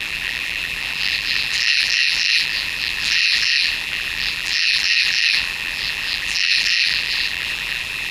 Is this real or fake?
fake